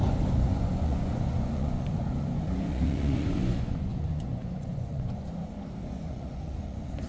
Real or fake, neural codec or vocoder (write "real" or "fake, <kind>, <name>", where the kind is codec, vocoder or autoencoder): fake, vocoder, Vocos